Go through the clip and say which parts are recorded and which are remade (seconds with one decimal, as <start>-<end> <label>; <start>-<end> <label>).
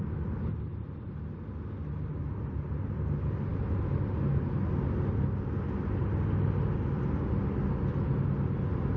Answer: 0.0-9.0 recorded